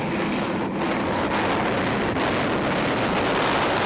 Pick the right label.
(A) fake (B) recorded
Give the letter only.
B